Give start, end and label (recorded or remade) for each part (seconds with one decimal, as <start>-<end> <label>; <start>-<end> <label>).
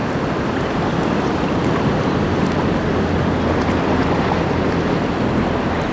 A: 0.0-5.9 recorded